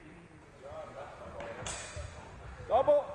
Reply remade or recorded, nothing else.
remade